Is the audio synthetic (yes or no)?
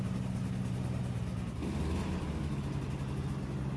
no